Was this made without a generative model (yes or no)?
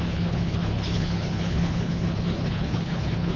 no